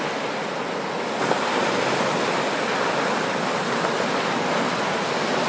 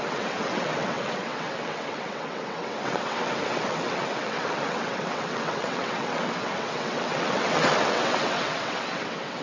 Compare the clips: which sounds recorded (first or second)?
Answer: first